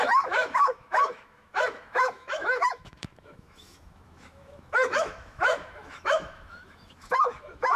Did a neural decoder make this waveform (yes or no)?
yes